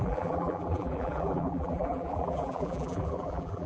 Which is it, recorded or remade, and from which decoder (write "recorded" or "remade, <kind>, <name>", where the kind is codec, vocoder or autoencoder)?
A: remade, vocoder, BigVGAN v2